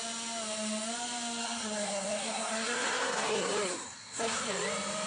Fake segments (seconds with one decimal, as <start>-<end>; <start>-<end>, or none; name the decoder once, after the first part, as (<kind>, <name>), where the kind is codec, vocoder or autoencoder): 1.4-4.5 (codec, SNAC)